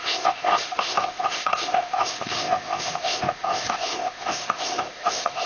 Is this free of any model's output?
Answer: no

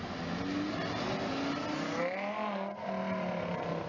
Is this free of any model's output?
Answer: yes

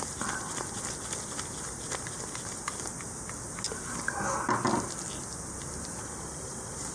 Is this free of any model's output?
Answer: yes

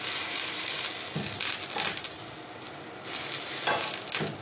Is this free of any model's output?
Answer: yes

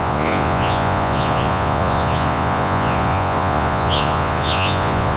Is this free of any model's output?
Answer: no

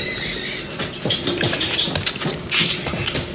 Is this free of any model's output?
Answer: yes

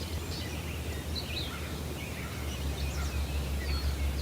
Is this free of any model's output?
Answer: yes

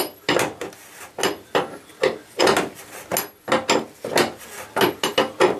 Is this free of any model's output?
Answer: yes